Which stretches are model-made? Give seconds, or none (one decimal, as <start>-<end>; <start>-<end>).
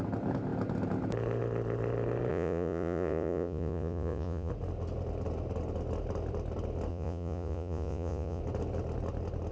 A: 2.3-4.5; 6.9-8.4